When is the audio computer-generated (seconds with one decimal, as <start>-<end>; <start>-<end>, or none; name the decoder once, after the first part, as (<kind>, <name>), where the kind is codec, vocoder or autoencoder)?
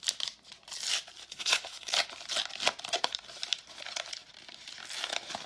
1.3-1.9 (codec, SNAC)